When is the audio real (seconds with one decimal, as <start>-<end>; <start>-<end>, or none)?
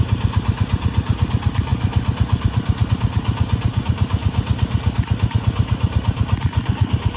0.0-7.2